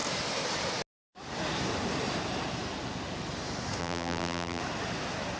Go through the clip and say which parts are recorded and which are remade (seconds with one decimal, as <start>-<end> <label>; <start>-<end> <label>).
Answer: 0.0-3.8 recorded; 3.8-4.6 remade; 4.6-5.4 recorded